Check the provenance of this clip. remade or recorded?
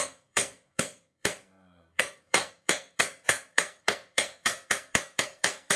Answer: remade